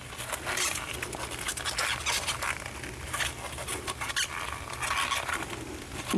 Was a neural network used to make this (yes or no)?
no